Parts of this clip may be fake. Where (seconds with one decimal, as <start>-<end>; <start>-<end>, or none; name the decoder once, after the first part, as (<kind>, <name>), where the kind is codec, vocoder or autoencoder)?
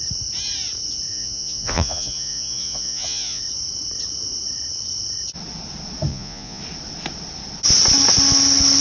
1.1-3.4 (vocoder, Vocos); 6.1-6.6